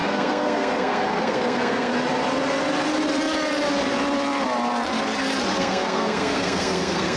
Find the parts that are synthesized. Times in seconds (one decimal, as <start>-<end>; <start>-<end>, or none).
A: 0.0-1.9; 5.6-7.2